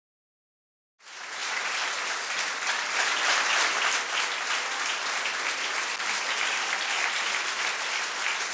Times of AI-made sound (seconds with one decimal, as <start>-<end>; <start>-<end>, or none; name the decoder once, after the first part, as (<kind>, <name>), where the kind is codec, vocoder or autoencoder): none